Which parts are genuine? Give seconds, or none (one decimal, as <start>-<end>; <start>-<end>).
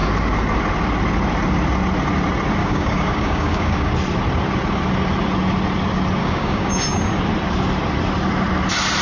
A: 0.0-2.6; 3.9-6.2; 6.7-9.0